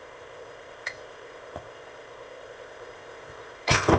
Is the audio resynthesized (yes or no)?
yes